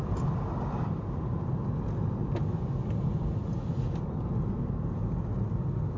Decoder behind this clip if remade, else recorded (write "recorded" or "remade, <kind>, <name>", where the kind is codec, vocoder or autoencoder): recorded